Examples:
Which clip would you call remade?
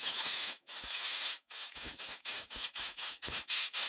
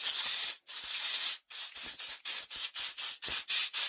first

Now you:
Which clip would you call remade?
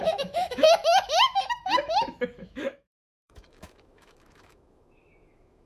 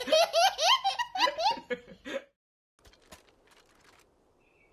first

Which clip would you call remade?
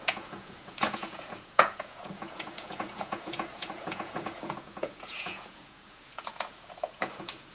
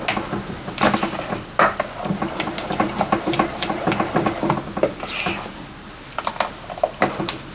first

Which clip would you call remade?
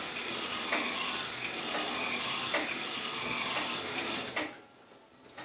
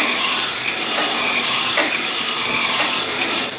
second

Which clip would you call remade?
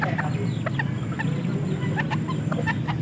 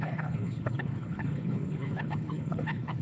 second